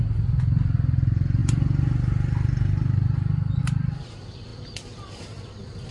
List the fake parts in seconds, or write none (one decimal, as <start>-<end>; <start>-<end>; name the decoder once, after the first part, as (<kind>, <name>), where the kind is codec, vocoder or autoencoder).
none